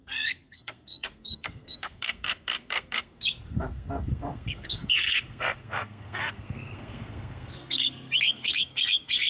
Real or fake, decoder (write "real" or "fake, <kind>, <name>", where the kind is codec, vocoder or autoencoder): fake, codec, SNAC